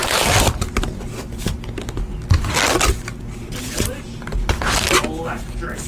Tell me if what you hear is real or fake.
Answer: real